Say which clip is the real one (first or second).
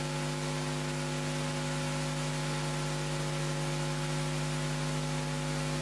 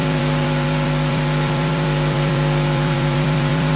first